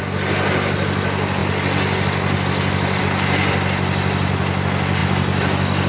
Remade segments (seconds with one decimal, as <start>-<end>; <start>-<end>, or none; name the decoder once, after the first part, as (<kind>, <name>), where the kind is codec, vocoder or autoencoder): none